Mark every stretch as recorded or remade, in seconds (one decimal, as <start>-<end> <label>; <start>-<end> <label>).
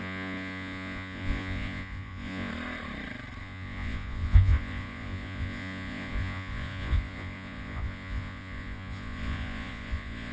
0.0-2.5 remade; 2.5-3.4 recorded; 3.4-10.3 remade